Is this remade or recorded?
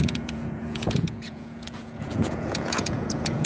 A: remade